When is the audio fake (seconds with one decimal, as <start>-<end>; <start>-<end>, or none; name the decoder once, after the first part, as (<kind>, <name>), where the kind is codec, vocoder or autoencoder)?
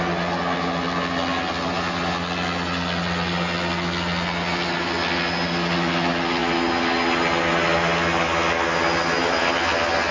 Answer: none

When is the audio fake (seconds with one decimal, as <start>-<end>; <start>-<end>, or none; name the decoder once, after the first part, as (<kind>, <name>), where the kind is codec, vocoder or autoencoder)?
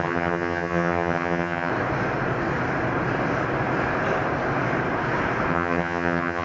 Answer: 0.0-1.7 (vocoder, HiFi-GAN); 5.5-6.4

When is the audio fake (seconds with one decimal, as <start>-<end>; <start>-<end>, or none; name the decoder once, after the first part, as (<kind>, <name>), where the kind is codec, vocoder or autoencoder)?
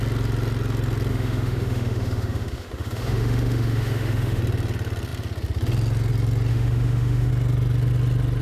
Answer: 1.1-4.4 (autoencoder, DAC-VAE); 6.5-7.3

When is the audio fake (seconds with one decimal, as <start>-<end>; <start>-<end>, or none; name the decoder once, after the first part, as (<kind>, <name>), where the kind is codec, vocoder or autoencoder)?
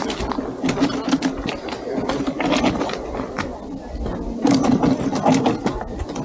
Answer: none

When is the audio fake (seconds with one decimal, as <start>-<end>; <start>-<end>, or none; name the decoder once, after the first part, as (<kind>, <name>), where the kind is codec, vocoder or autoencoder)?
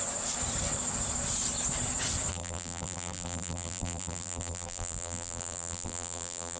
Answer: 2.3-6.6 (vocoder, BigVGAN v2)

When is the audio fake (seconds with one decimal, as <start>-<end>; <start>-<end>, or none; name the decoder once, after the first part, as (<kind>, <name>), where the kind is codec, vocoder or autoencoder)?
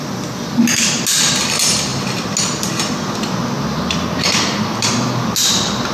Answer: none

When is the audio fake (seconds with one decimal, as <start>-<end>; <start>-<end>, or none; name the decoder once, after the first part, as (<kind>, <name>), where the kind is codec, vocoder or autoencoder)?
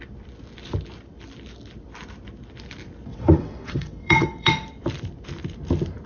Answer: 3.1-4.5 (vocoder, WaveNeXt)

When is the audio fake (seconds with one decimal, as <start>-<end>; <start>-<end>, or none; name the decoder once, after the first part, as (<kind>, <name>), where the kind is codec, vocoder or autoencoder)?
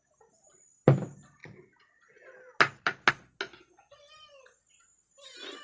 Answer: none